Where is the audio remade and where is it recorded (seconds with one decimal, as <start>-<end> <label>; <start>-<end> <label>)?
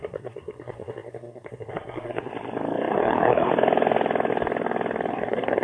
0.0-2.3 remade; 2.3-2.9 recorded; 2.9-3.5 remade; 3.5-5.1 recorded; 5.1-5.6 remade